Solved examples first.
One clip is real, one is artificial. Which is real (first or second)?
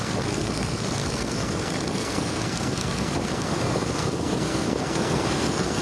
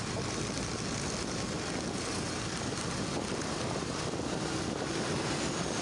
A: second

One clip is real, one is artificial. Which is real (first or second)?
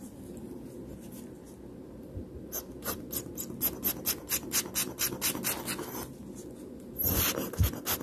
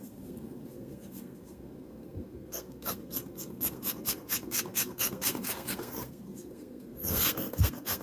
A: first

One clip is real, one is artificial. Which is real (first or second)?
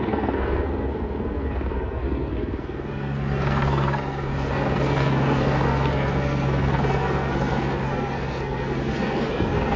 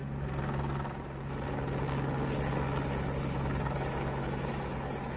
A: second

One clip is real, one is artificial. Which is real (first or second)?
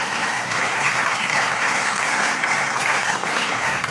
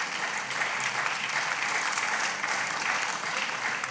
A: second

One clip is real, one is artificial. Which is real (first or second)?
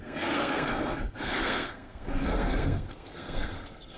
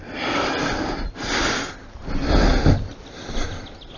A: second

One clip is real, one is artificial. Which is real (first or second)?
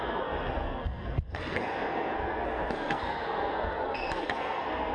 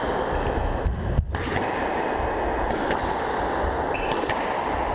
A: second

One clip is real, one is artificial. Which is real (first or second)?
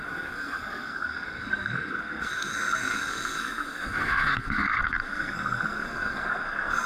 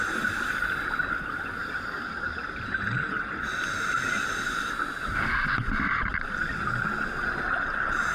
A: second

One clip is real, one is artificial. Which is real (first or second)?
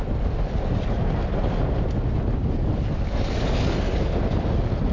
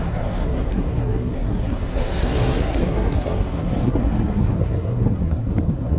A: first